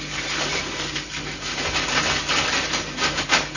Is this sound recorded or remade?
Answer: recorded